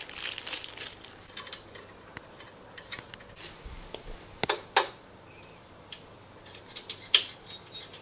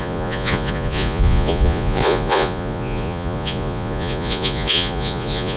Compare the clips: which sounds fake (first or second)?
second